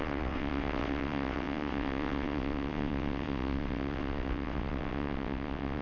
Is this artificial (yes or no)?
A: yes